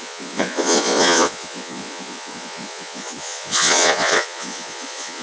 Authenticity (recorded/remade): remade